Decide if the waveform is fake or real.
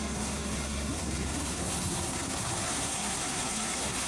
fake